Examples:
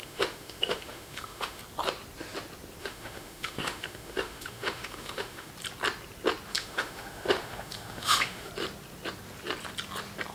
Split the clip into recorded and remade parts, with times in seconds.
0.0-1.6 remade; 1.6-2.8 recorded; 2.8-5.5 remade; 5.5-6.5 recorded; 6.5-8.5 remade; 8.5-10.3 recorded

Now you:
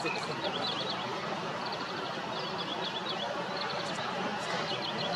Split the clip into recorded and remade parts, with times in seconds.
0.0-5.2 recorded